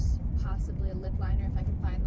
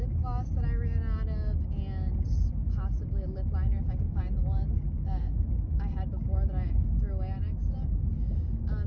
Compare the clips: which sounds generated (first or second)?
first